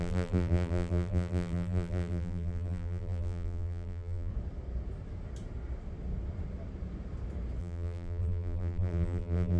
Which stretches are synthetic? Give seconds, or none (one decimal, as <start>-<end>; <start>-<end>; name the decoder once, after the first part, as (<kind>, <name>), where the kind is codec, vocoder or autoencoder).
0.0-4.3 (vocoder, BigVGAN v2); 7.6-9.6